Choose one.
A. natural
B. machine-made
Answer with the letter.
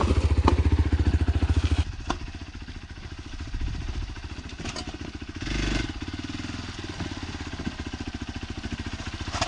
A